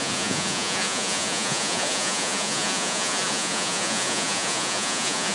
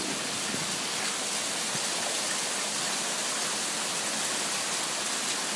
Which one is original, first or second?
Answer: second